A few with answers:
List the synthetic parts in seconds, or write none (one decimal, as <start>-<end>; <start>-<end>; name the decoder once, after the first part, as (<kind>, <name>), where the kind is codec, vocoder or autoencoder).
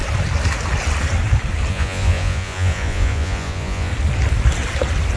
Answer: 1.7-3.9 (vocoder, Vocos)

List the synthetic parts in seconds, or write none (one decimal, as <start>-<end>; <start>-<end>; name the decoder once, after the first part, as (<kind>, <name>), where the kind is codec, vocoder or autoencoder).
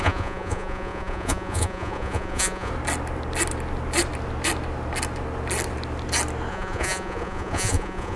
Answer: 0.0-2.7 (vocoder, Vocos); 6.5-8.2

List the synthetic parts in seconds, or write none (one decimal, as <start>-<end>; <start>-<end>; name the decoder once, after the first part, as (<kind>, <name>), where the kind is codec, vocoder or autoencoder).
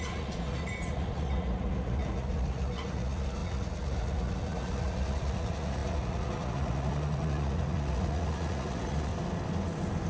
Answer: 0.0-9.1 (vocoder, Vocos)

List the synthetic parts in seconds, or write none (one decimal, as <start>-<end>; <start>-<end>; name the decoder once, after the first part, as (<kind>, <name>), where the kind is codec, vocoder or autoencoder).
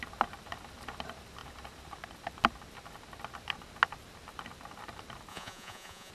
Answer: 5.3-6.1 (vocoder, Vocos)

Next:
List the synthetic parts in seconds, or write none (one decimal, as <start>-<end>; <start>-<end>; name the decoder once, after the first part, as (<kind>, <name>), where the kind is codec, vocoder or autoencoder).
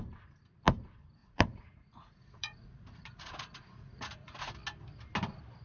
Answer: 1.2-4.5 (vocoder, Vocos)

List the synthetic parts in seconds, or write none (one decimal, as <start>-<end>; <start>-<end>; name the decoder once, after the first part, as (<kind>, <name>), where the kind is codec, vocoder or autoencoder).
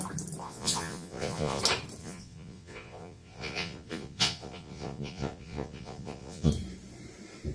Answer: 0.4-1.6 (vocoder, Vocos); 2.0-6.5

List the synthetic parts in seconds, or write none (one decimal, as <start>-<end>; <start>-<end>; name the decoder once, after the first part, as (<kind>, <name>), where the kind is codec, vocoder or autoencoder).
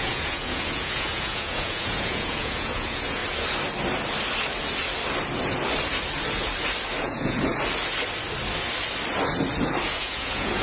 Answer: 0.0-3.2 (vocoder, Vocos); 7.0-7.5; 9.9-10.6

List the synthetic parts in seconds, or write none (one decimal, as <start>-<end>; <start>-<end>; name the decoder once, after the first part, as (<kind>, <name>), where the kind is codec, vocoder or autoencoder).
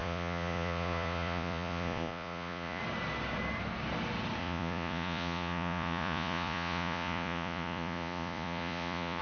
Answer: 0.0-2.8 (vocoder, Vocos); 4.4-9.2